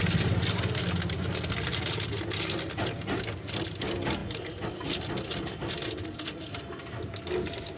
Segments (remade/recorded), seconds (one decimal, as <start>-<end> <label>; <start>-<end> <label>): 0.0-7.8 recorded